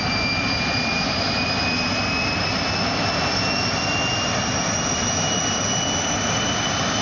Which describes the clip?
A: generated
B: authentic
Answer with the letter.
B